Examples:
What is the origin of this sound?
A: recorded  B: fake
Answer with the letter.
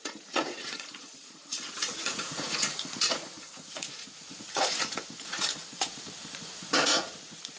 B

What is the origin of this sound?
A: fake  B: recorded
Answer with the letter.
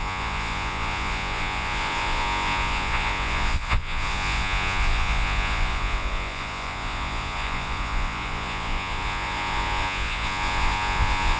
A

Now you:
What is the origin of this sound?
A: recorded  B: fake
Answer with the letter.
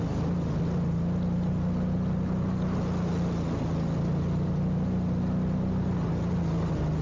A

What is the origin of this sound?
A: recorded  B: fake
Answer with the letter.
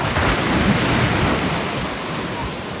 A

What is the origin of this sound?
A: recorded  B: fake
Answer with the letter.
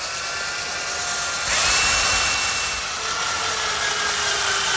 A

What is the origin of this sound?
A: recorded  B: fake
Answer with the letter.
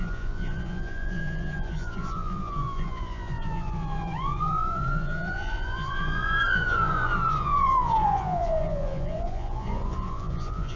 B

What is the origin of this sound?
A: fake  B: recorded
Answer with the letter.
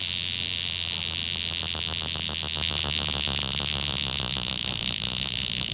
B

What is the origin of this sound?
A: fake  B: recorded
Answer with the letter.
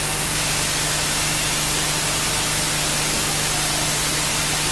B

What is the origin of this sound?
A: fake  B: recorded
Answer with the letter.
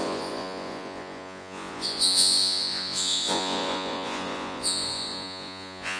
A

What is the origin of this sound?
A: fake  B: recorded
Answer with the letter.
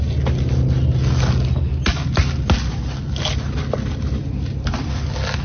B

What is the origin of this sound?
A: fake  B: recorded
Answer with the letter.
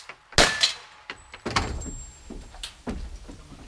B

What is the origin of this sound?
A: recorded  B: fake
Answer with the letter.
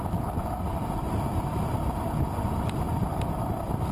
A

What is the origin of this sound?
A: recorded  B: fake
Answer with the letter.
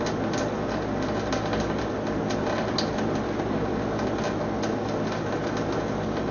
A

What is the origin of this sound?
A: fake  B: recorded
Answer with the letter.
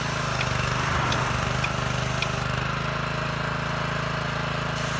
B